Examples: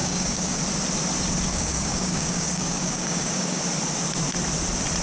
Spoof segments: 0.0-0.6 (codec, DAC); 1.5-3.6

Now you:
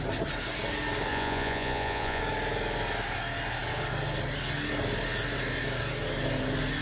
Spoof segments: 1.1-2.2 (vocoder, Vocos)

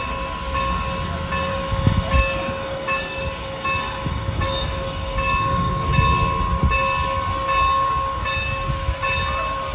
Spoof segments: 1.5-5.7 (codec, DAC)